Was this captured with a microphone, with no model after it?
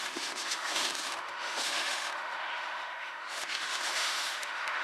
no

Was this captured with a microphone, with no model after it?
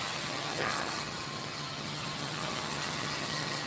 no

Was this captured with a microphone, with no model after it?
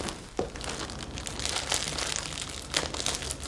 yes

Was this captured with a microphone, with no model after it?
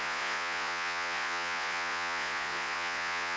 no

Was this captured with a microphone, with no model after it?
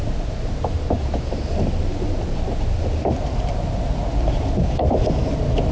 yes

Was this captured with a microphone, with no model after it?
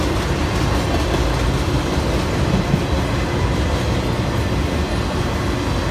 yes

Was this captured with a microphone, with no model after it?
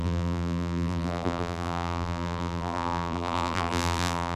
no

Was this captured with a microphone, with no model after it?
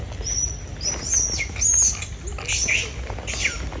yes